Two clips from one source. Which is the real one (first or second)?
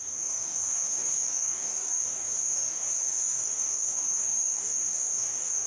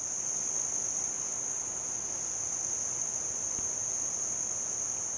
second